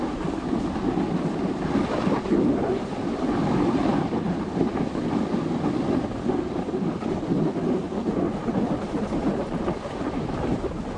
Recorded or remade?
recorded